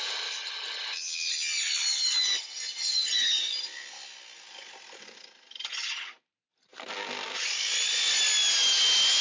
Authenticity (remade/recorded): recorded